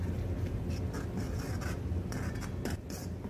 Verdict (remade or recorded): recorded